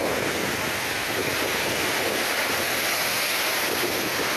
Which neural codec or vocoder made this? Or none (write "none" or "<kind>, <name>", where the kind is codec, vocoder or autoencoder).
none